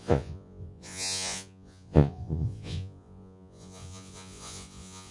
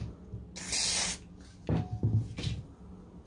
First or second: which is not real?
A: first